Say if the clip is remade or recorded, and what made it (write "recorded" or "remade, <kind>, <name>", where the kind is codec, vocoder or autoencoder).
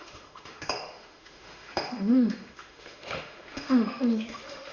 remade, autoencoder, DAC-VAE